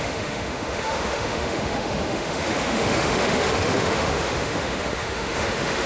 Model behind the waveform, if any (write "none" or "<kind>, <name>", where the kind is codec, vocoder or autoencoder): autoencoder, DAC-VAE